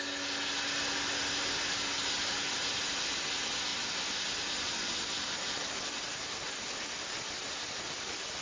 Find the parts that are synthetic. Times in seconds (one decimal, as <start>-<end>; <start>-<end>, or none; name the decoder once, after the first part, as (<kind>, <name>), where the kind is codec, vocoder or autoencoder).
3.7-7.3 (vocoder, BigVGAN v2)